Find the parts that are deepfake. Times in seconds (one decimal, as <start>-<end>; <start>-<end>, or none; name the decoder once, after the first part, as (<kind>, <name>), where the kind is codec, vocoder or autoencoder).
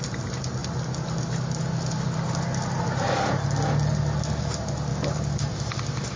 4.9-5.8 (vocoder, BigVGAN v2)